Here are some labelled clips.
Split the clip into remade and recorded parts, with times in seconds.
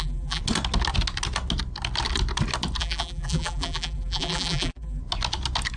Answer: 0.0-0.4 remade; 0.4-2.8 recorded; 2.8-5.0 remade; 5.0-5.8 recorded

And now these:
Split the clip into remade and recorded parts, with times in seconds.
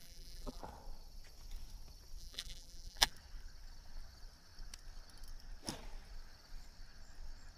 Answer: 0.0-0.6 remade; 0.6-2.2 recorded; 2.2-3.1 remade; 3.1-7.6 recorded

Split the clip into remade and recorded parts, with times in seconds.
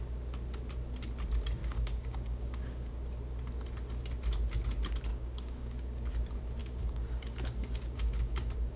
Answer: 0.0-1.6 recorded; 1.6-2.9 remade; 2.9-5.1 recorded; 5.1-6.1 remade; 6.1-6.6 recorded; 6.6-8.8 remade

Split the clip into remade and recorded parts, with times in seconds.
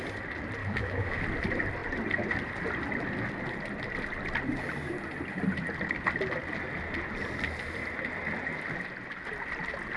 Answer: 0.0-0.6 recorded; 0.6-1.2 remade; 1.2-10.0 recorded